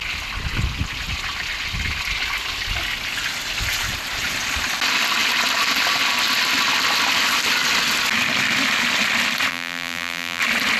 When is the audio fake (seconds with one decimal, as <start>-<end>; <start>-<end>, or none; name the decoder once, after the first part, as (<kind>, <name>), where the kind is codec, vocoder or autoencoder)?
9.5-10.4 (vocoder, BigVGAN v2)